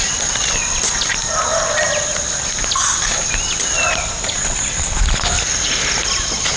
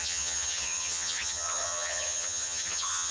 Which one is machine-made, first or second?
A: second